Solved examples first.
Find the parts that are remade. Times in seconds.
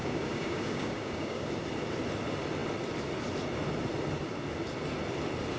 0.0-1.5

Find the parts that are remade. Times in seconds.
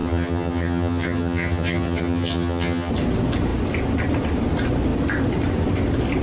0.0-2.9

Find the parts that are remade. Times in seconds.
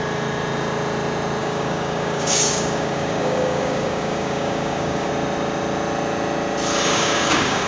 1.4-5.1; 6.9-7.7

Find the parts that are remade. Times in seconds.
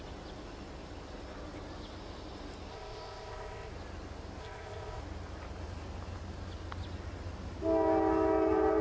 2.7-3.7; 4.4-5.0